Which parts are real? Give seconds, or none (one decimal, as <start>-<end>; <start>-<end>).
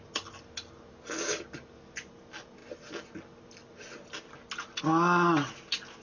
0.0-6.0